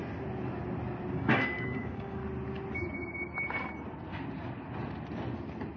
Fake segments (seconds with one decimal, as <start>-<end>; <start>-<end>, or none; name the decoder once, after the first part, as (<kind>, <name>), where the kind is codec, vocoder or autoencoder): 1.1-2.2 (codec, DAC)